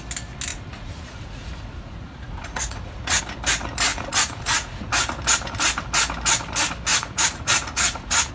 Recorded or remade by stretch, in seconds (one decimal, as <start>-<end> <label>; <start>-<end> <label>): 0.0-0.5 recorded; 0.5-3.2 remade; 3.2-3.9 recorded; 3.9-4.9 remade; 4.9-6.9 recorded; 6.9-8.3 remade